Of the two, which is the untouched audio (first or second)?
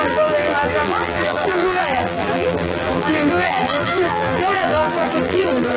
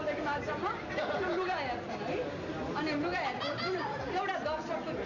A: second